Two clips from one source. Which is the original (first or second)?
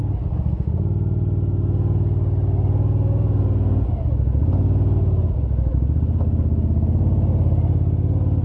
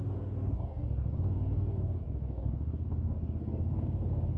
first